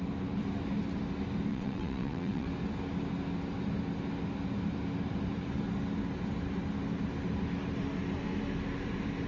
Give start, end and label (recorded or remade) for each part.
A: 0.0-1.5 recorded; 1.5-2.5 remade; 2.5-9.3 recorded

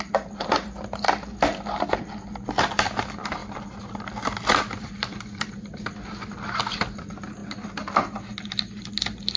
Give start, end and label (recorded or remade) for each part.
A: 0.0-1.5 recorded; 1.5-2.1 remade; 2.1-3.4 recorded; 3.4-5.5 remade; 5.5-9.4 recorded

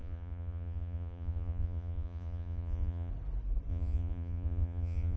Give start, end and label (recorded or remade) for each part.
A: 0.0-3.1 remade; 3.1-3.7 recorded; 3.7-5.2 remade